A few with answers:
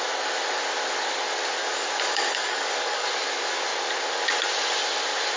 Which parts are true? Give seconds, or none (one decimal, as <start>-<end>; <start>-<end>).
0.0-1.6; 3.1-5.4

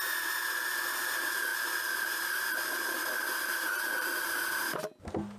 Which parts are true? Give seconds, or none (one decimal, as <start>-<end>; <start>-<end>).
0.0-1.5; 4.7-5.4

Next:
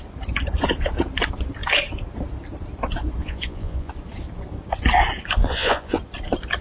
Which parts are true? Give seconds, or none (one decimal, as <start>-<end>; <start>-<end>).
0.0-3.2; 3.9-5.4; 6.0-6.6